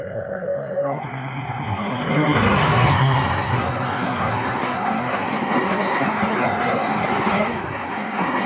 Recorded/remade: remade